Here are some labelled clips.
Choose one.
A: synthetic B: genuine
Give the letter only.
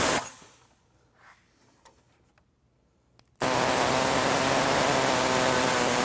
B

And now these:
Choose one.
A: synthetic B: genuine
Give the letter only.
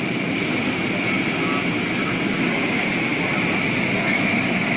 B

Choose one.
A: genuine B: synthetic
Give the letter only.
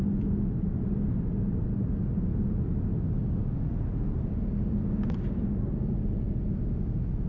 A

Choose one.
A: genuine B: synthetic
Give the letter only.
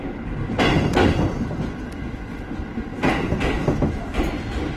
A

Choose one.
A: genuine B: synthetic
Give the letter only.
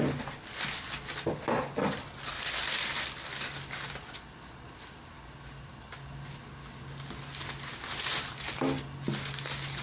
A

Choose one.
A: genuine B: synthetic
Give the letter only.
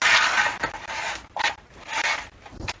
A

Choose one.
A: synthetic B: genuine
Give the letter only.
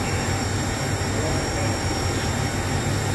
B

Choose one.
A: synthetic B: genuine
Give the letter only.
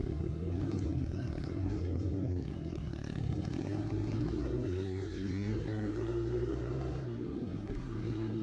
A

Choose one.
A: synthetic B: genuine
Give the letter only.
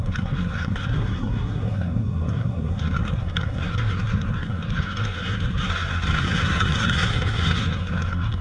A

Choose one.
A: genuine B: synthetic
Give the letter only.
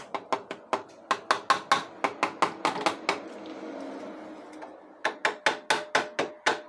A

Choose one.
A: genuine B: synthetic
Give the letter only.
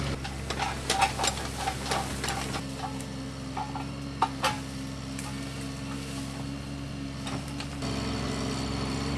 A